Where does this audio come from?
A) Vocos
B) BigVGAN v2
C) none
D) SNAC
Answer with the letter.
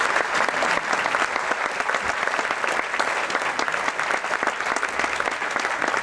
C